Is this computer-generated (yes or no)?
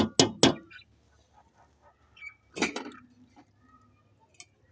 no